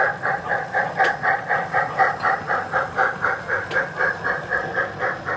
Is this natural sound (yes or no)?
yes